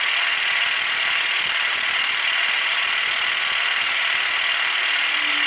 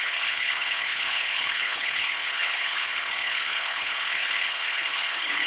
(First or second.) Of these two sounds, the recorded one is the first